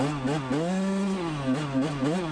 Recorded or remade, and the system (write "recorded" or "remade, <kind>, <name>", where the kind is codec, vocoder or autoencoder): recorded